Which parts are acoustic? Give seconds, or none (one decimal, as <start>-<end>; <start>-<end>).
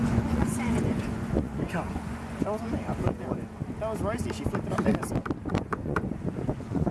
3.6-5.5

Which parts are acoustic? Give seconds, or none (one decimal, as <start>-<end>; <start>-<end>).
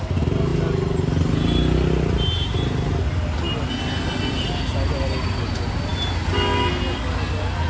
0.0-7.7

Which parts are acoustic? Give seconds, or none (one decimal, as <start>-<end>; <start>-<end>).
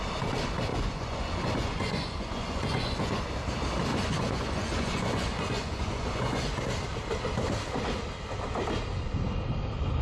0.0-0.7; 3.2-3.9; 6.6-10.0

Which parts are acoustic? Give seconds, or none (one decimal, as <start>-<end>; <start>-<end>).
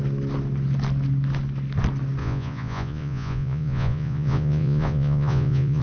0.0-2.2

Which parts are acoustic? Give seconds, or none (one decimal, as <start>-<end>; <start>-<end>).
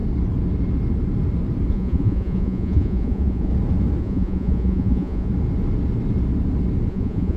0.0-1.7; 3.5-4.0; 5.3-6.9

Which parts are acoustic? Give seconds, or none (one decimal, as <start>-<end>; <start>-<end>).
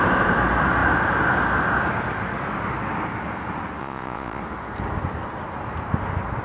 0.0-3.8; 4.4-6.4